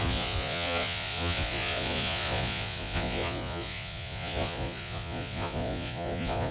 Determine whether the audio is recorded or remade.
remade